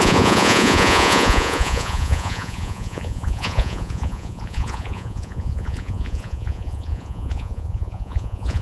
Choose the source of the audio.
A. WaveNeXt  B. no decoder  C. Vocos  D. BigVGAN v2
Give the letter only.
C